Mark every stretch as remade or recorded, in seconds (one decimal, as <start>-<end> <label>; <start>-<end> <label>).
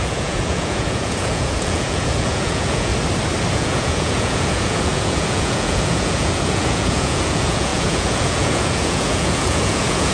0.0-2.9 remade; 2.9-3.5 recorded; 3.5-10.1 remade